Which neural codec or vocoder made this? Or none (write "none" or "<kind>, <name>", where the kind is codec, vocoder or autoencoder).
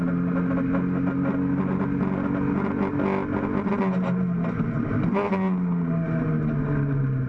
none